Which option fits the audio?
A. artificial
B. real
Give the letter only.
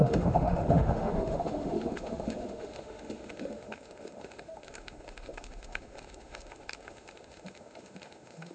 A